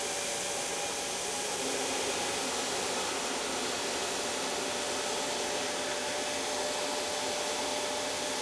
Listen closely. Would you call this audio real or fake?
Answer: real